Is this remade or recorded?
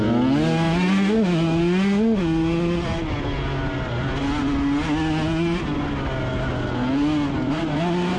recorded